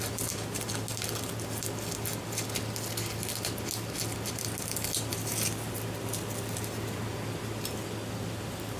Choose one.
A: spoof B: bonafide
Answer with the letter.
B